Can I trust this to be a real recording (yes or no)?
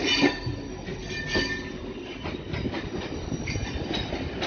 yes